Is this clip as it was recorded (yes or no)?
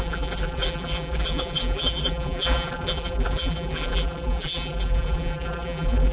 no